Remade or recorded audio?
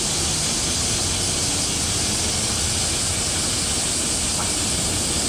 recorded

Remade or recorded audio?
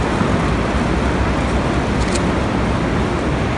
recorded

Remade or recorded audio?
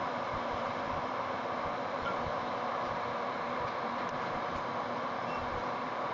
remade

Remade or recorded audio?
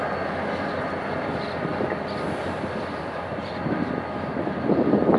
recorded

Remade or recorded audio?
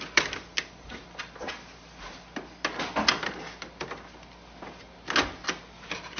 recorded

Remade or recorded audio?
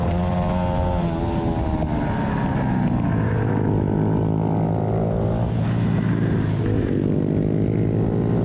recorded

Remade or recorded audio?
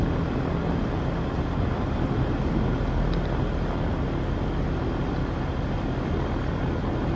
recorded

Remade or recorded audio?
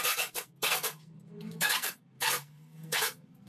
remade